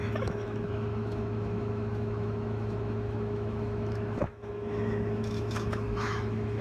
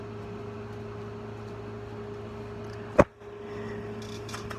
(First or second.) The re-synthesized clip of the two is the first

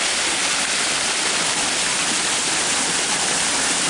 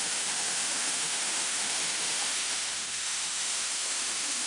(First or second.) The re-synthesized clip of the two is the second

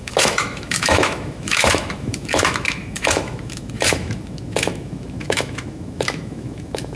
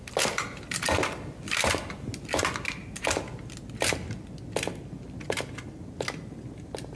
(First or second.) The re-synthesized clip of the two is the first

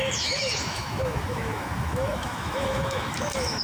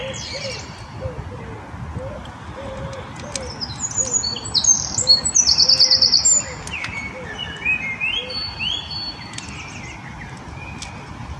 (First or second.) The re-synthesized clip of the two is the first